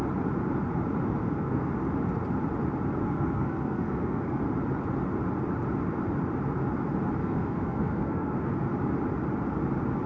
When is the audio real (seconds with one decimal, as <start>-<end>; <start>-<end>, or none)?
0.0-1.2; 1.7-3.0; 4.4-7.2; 8.5-10.1